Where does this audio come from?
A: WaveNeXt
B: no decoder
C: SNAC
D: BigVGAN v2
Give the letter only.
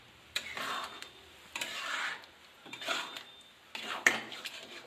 B